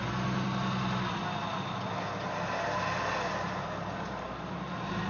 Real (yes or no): yes